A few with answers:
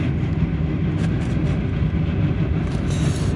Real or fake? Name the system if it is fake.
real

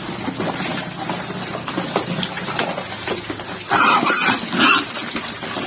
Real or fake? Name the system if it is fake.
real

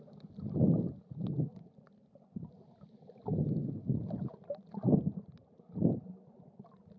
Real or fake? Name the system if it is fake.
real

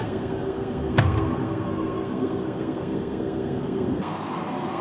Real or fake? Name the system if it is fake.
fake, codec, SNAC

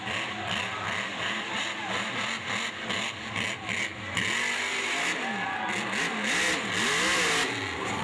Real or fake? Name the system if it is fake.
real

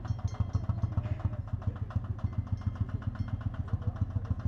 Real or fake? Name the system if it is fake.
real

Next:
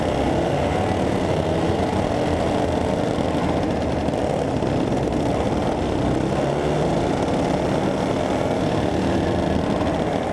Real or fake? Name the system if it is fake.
real